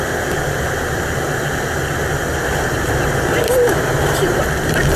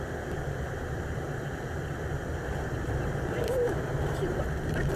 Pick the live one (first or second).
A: first